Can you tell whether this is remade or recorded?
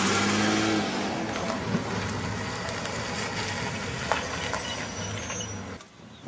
recorded